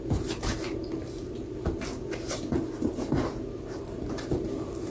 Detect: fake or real real